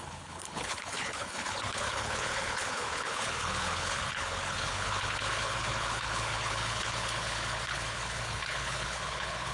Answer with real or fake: fake